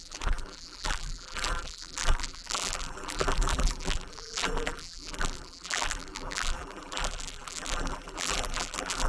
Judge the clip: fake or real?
fake